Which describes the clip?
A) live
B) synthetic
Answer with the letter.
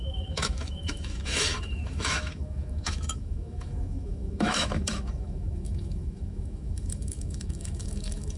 B